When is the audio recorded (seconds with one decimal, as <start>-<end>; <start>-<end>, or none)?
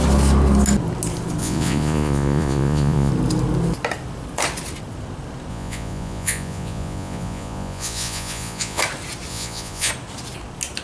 0.0-1.4; 3.1-5.5; 8.8-9.3; 9.9-10.8